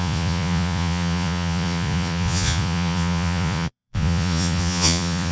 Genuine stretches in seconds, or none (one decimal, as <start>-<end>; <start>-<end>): none